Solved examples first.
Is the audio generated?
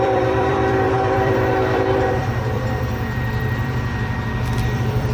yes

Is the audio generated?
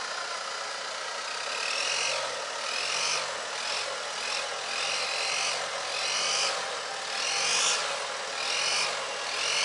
no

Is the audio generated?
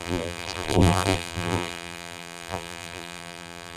yes